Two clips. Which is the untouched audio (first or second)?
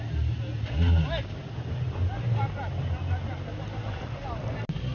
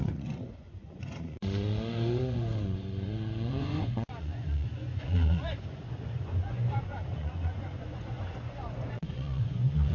first